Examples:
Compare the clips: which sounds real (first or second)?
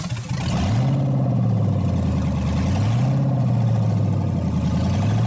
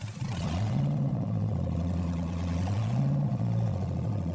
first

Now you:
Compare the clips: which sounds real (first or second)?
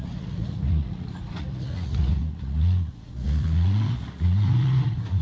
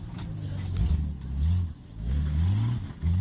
second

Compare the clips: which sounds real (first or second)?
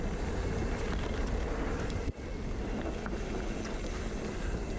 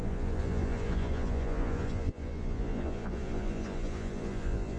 first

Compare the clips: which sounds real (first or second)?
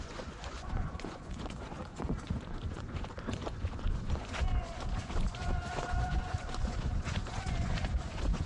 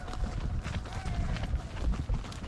second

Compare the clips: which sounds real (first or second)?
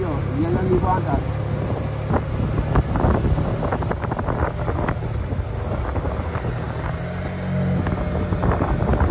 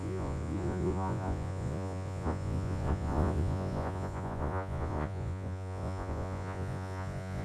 first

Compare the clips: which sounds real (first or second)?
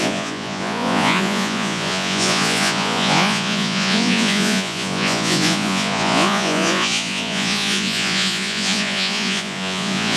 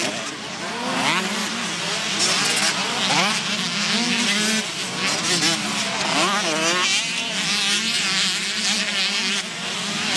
second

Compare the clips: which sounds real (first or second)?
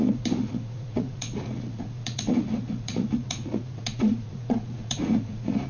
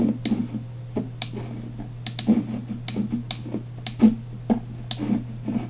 second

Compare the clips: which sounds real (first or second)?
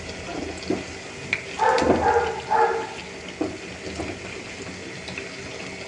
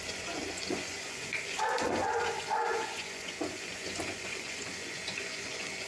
first